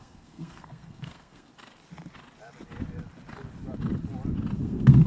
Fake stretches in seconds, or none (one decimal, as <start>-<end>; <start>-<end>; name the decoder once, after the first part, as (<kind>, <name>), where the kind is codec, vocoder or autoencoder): 0.0-1.5 (codec, SNAC); 4.6-5.1

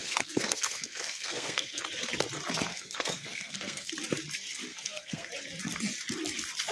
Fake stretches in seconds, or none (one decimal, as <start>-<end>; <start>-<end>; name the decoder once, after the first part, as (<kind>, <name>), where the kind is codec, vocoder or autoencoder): 0.0-1.8 (codec, SNAC); 2.7-3.9; 4.7-5.3

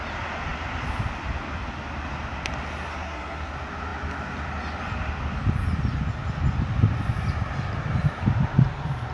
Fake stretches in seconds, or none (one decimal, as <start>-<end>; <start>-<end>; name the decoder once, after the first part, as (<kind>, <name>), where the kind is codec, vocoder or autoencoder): 2.9-3.5 (codec, SNAC)